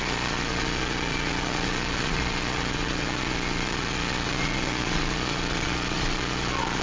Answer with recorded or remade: remade